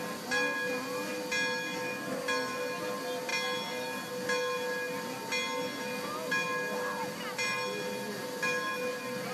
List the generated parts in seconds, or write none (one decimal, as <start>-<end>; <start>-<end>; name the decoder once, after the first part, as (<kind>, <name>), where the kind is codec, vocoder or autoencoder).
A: none